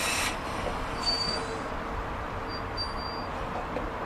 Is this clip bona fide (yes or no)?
yes